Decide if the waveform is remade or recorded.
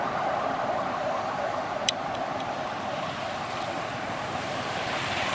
remade